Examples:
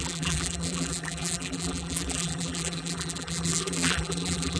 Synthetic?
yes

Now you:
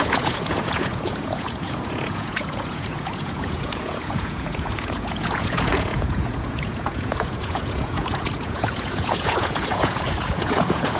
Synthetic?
yes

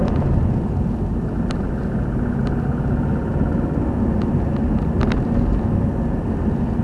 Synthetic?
no